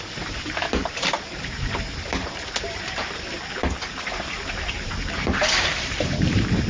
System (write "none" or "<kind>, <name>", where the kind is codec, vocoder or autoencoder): vocoder, BigVGAN v2